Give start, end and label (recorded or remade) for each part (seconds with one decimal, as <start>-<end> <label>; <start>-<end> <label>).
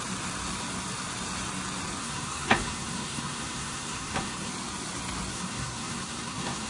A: 0.0-2.0 recorded; 2.0-4.5 remade; 4.5-5.3 recorded; 5.3-6.7 remade